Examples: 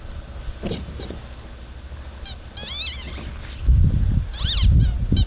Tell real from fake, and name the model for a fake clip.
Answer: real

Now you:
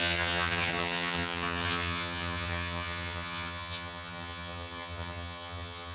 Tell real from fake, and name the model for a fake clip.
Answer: fake, vocoder, HiFi-GAN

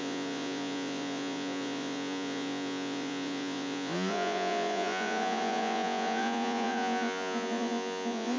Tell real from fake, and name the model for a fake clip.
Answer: fake, vocoder, Vocos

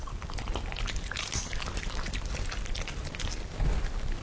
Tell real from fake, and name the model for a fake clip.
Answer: real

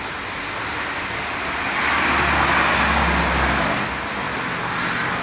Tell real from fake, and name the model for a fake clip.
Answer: real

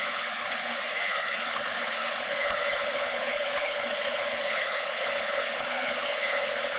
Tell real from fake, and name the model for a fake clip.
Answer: fake, codec, HILCodec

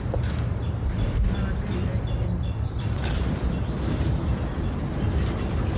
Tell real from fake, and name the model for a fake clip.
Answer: real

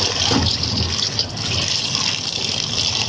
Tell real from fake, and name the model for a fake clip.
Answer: real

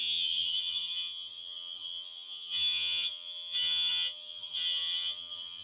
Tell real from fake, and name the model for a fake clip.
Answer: fake, vocoder, HiFi-GAN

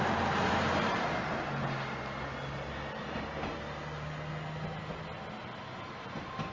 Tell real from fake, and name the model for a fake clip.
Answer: real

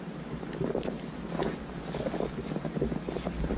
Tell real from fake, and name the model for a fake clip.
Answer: real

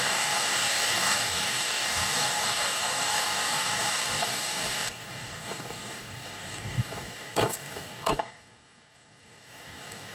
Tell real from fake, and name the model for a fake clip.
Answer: fake, codec, DAC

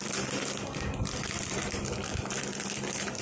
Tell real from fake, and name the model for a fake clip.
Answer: fake, vocoder, BigVGAN v2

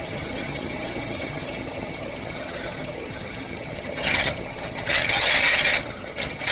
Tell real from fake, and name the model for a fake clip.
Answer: fake, vocoder, HiFi-GAN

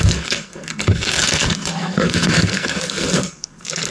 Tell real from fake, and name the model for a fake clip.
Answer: fake, codec, SNAC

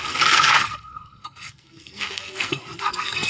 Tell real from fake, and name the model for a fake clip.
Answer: fake, codec, SNAC